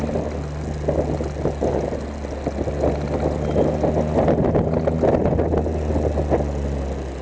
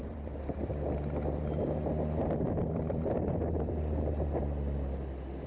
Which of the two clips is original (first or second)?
first